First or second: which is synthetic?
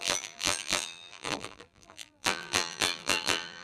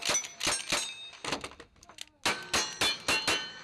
first